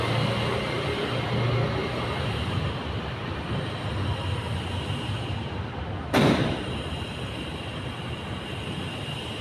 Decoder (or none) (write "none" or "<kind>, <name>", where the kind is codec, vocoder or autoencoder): none